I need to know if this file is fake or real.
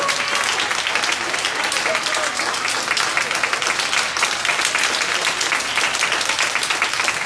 real